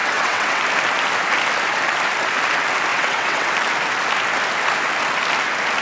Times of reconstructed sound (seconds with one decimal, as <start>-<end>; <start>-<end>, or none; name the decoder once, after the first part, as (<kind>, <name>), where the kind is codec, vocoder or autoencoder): 0.0-0.6 (vocoder, WaveNeXt); 2.9-3.5